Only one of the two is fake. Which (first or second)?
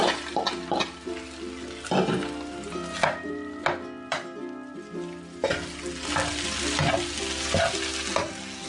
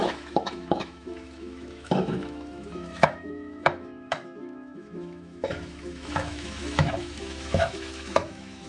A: second